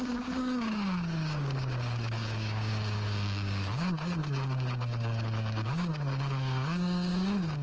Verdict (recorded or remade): remade